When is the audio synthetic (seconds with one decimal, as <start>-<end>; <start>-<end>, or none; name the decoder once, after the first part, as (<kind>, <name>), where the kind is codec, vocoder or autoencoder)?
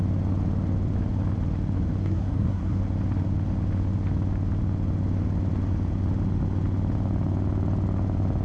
2.0-2.8 (codec, SNAC)